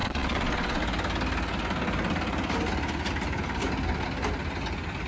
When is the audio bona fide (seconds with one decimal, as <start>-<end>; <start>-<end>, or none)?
0.8-5.1